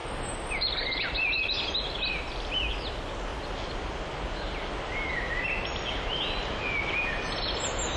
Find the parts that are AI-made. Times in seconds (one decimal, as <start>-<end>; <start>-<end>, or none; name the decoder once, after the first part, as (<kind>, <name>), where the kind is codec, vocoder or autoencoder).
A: none